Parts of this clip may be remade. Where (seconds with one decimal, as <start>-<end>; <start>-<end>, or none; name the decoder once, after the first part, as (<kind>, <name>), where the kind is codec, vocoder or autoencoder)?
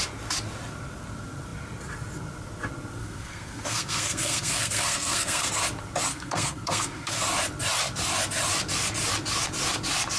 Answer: 3.0-5.5 (codec, SNAC); 6.1-7.2